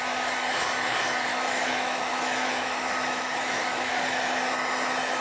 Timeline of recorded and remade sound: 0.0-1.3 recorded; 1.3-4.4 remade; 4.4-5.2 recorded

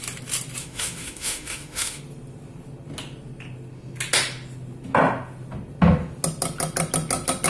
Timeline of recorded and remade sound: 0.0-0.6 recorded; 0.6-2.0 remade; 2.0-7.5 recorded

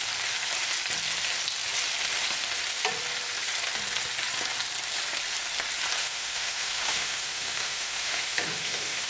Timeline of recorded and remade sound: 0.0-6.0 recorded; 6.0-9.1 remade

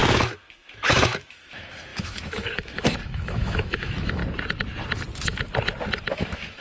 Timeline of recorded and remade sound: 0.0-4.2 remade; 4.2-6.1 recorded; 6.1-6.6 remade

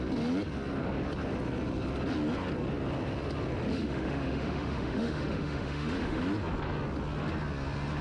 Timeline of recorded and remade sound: 0.0-3.7 recorded; 3.7-6.2 remade; 6.2-8.0 recorded

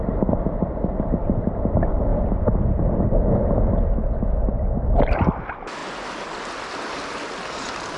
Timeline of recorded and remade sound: 0.0-8.0 recorded